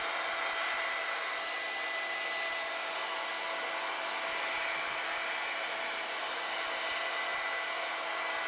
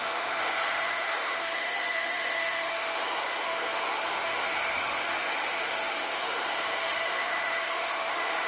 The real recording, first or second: first